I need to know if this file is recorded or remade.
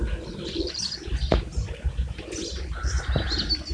recorded